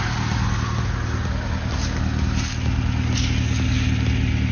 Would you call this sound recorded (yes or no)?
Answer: yes